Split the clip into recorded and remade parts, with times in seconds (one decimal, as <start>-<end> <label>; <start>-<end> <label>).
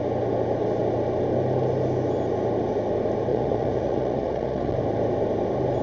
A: 0.0-3.3 recorded; 3.3-4.7 remade; 4.7-5.8 recorded